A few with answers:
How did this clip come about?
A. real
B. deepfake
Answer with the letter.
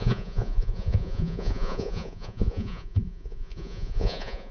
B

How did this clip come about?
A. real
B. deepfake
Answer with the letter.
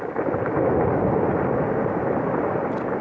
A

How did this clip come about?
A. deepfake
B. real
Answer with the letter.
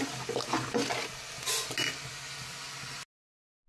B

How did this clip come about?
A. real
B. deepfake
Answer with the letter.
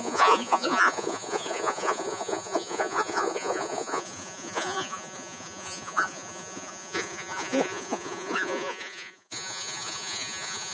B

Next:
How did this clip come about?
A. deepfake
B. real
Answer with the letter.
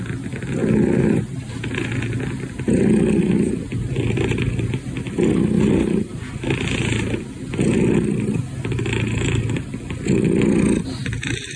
B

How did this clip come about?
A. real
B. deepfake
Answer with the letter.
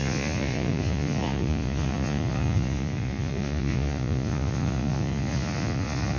B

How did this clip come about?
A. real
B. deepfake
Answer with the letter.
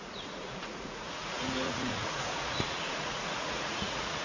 B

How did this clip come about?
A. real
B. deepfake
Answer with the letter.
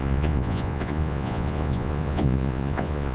B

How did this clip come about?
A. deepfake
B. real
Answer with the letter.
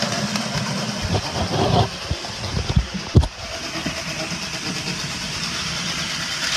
B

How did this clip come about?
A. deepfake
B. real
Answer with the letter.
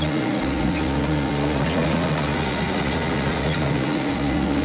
A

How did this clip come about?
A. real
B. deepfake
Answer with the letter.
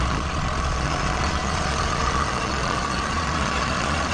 B